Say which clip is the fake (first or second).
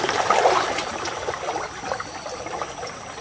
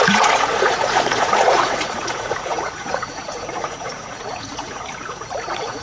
second